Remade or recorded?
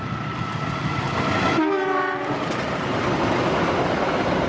remade